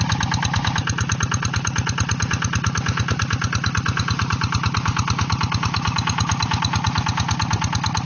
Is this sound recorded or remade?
recorded